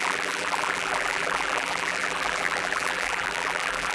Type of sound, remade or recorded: remade